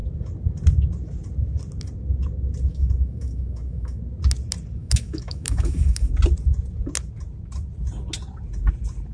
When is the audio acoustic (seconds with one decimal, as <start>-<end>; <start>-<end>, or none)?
0.0-2.7; 4.0-4.8; 6.1-9.1